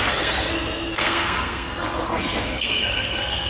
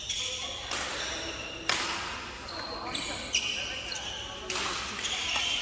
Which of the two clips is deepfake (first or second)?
first